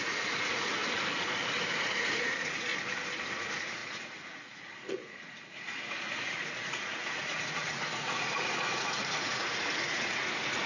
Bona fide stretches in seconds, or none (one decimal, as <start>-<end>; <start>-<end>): 0.8-1.5; 2.7-3.3